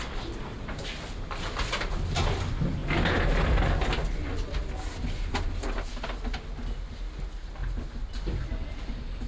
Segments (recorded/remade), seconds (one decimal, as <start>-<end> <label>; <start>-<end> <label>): 0.0-9.3 recorded